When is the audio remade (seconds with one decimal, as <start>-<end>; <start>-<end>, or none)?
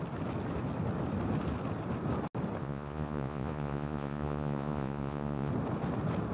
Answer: 2.6-5.5